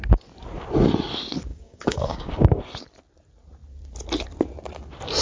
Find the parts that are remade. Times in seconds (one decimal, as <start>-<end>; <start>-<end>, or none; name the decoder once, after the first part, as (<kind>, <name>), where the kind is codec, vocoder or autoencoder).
1.5-2.6 (codec, DAC)

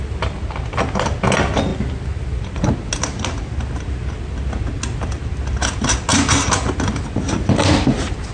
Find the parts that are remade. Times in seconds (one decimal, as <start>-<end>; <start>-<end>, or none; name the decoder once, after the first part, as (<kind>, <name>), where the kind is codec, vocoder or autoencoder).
none

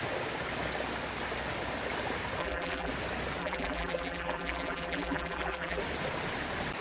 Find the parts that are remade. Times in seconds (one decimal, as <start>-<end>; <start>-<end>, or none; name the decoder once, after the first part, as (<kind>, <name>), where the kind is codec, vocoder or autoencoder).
2.4-2.9 (vocoder, BigVGAN v2); 3.4-5.8